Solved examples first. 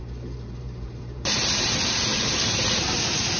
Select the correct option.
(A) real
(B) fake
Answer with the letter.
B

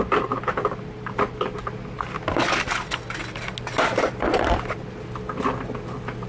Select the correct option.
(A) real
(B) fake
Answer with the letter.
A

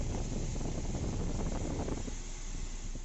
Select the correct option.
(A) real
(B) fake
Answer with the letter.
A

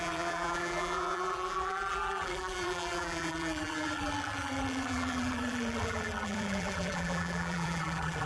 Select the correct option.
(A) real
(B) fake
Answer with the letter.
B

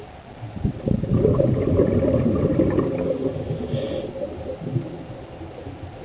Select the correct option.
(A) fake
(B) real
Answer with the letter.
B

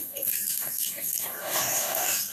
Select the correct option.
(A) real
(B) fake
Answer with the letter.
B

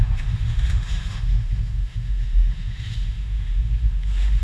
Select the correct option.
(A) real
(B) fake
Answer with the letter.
B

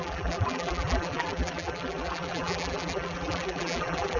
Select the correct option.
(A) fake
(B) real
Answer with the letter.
A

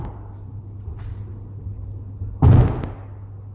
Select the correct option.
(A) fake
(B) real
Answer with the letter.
B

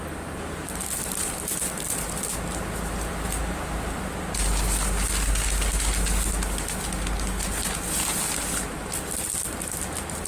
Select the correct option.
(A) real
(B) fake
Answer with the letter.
A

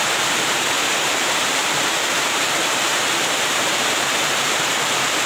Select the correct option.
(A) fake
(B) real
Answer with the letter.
A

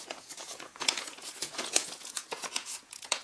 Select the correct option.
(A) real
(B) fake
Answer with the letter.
B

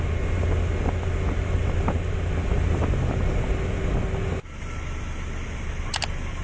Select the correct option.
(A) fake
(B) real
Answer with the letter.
B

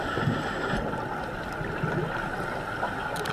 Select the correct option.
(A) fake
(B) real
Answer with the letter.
B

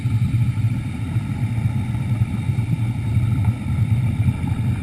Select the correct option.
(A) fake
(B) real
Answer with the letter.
B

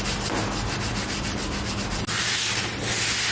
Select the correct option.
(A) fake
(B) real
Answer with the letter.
B